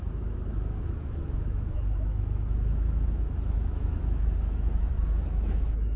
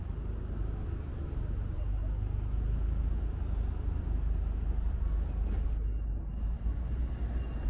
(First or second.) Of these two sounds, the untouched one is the second